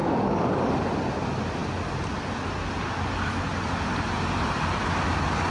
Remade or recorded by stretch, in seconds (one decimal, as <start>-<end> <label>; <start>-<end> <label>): 0.0-0.7 remade; 0.7-5.5 recorded